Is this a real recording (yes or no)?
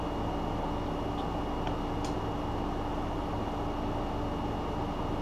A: yes